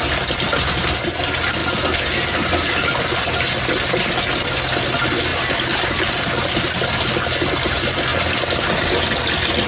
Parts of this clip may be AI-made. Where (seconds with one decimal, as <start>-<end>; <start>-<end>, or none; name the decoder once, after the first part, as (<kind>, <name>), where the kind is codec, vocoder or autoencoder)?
none